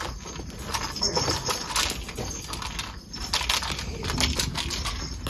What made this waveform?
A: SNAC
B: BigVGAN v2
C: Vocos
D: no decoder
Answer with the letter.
D